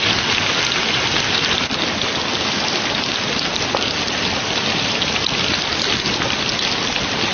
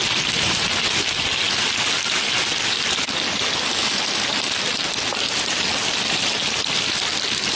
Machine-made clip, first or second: first